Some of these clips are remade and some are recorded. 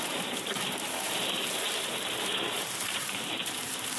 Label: remade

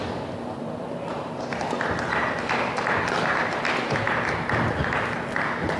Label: recorded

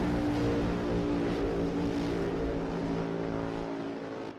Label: recorded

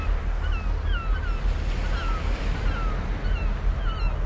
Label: recorded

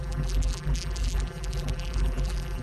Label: remade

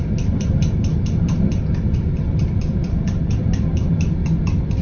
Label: remade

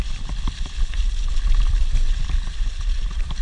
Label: remade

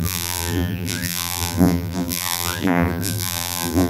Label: remade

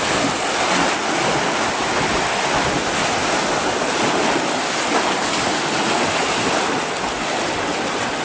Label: recorded